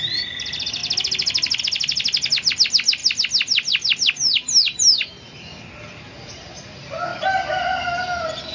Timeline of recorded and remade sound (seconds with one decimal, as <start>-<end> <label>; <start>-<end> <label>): 0.0-8.5 recorded